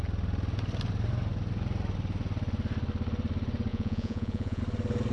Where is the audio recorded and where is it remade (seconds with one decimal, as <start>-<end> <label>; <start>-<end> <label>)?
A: 0.0-3.7 recorded; 3.7-4.6 remade; 4.6-5.1 recorded